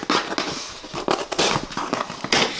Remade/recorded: recorded